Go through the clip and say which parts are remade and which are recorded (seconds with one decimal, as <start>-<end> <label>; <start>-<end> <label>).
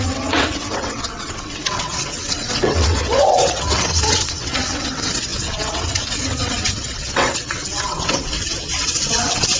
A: 0.0-9.6 remade